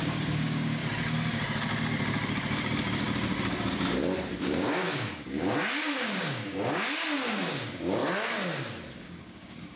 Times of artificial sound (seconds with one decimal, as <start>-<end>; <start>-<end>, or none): 0.0-0.8; 4.4-8.0; 8.9-9.8